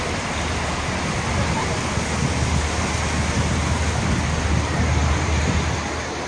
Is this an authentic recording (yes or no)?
yes